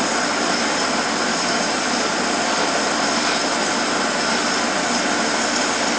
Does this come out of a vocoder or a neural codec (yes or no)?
no